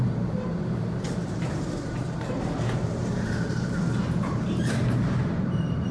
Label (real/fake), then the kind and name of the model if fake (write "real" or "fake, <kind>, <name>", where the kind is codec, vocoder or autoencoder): fake, vocoder, BigVGAN v2